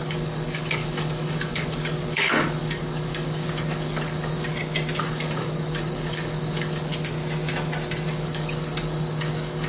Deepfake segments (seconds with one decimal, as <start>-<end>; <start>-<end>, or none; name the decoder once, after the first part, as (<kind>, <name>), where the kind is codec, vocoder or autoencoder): 0.0-4.5 (codec, DAC); 5.0-6.9; 8.1-9.7

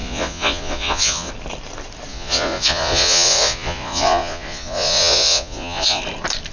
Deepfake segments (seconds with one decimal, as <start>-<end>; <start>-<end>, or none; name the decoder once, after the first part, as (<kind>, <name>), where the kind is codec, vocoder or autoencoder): 0.0-1.3 (vocoder, Vocos); 2.1-6.0

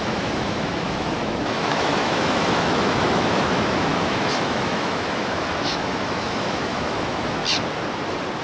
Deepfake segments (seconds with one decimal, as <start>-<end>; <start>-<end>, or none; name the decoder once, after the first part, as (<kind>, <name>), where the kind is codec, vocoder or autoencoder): 0.0-7.4 (autoencoder, DAC-VAE)

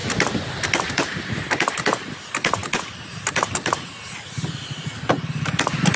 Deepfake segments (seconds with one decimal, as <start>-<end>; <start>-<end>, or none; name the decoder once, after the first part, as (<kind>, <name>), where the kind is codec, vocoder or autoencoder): none

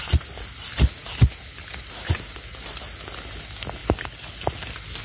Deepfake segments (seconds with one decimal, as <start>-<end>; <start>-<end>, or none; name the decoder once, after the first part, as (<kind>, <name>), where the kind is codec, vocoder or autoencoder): none